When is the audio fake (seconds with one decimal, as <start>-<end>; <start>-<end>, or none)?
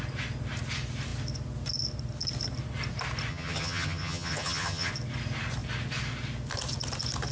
3.3-4.9